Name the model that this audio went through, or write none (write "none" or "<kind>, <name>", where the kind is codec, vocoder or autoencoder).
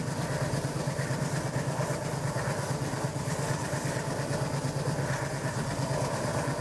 none